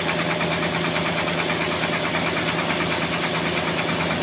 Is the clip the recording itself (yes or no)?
yes